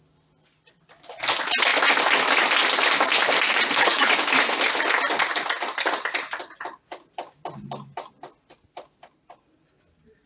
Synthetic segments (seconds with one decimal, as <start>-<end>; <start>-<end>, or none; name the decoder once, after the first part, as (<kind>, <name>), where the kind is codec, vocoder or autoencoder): 3.9-4.5 (autoencoder, DAC-VAE)